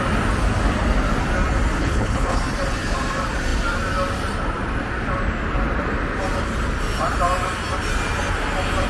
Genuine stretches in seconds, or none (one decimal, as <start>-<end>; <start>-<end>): 0.0-1.8; 2.4-8.9